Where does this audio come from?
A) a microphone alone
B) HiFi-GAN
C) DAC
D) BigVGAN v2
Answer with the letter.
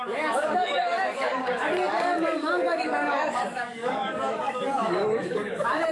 C